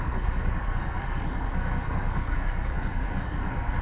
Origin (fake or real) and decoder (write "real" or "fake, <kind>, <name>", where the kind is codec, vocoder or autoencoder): fake, codec, SNAC